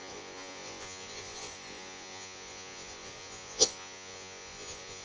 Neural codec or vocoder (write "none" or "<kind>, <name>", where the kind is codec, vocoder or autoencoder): vocoder, Vocos